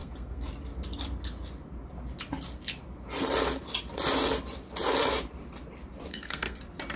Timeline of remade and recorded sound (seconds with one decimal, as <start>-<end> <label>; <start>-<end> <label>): 0.0-0.5 remade; 0.5-6.1 recorded; 6.1-6.6 remade; 6.6-7.0 recorded

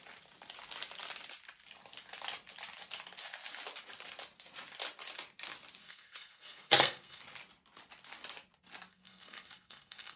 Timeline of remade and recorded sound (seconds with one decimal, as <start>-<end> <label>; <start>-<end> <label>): 0.0-5.8 recorded; 5.8-7.2 remade; 7.2-8.9 recorded; 8.9-10.2 remade